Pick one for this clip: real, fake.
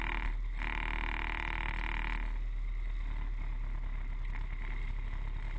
real